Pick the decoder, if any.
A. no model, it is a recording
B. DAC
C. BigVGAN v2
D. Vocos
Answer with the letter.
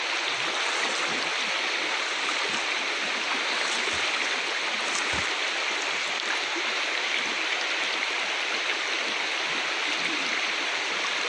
A